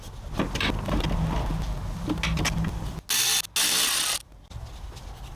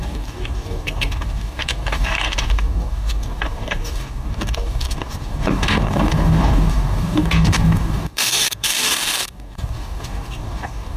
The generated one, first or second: second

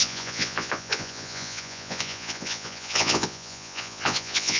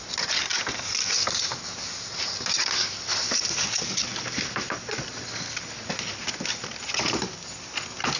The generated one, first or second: first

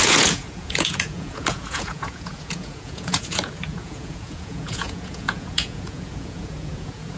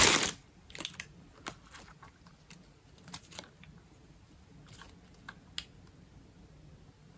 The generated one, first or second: first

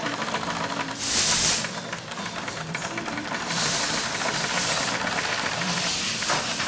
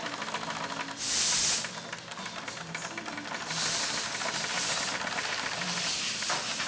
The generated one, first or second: first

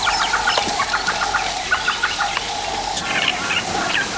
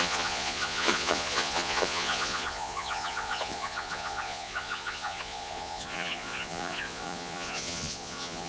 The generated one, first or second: second